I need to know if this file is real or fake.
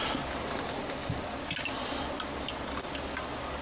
real